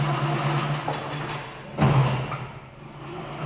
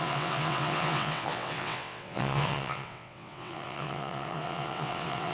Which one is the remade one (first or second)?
second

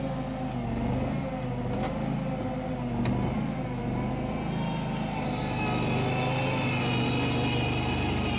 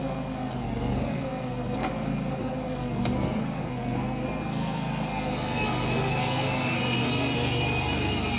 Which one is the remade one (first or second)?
second